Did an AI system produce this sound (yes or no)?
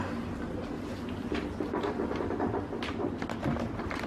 no